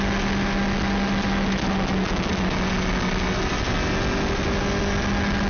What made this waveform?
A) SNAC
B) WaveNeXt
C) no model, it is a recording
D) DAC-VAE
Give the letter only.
C